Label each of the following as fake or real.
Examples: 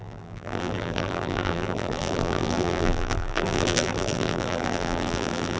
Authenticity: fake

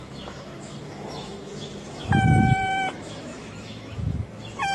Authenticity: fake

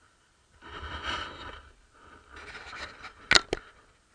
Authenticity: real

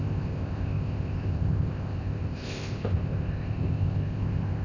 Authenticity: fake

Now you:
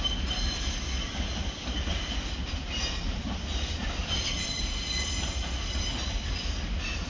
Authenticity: real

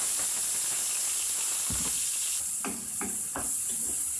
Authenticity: real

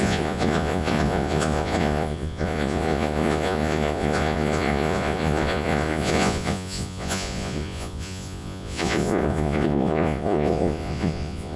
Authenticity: fake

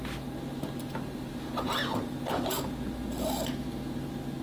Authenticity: real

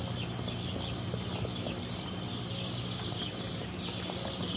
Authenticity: fake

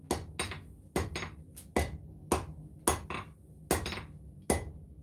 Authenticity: real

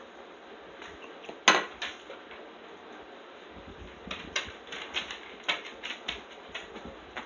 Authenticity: real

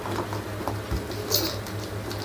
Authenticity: real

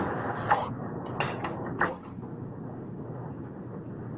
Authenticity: real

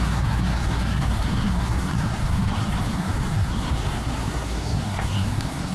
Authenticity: fake